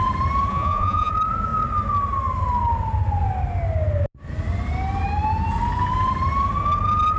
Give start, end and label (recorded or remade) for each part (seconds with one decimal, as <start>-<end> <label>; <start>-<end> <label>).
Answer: 0.0-0.5 recorded; 0.5-1.1 remade; 1.1-7.2 recorded